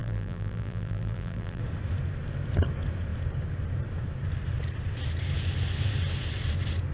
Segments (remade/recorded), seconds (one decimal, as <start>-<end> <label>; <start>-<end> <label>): 0.0-1.6 remade; 1.6-6.9 recorded